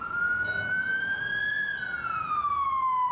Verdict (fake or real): real